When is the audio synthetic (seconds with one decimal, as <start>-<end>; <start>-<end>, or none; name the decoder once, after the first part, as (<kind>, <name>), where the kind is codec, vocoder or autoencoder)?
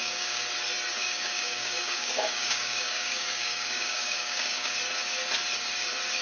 0.0-0.5 (codec, DAC); 1.0-4.7